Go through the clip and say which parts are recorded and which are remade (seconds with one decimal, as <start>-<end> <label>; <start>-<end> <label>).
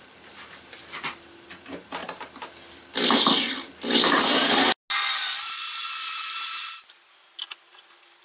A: 0.0-8.2 recorded